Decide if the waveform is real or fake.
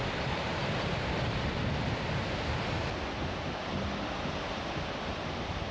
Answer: real